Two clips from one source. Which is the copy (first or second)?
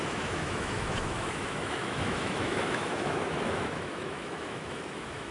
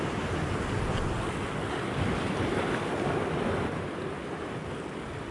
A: first